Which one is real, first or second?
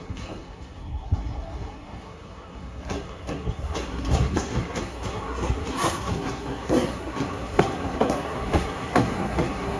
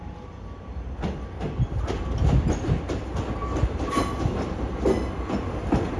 second